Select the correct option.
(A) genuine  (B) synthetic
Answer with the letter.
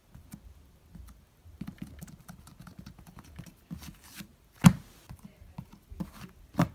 A